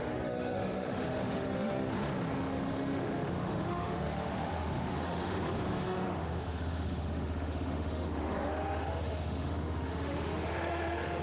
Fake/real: fake